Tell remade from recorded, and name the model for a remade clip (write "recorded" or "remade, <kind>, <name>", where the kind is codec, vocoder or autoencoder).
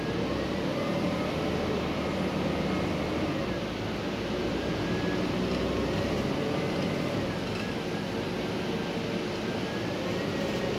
recorded